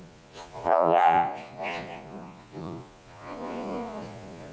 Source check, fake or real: fake